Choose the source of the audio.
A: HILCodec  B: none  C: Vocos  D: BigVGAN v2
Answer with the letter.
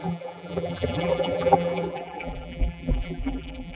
D